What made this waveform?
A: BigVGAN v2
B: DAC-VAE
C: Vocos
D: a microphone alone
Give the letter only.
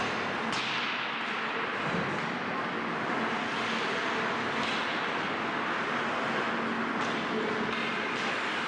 D